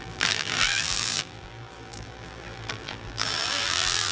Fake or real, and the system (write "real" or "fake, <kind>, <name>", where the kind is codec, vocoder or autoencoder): fake, vocoder, BigVGAN v2